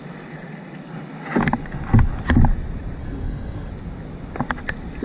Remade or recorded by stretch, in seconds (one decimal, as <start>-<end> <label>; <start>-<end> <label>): 0.0-3.0 recorded; 3.0-3.7 remade; 3.7-5.0 recorded